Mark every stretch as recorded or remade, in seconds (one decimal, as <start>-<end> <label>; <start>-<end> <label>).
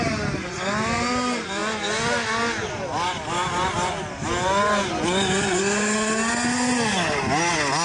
0.0-7.8 recorded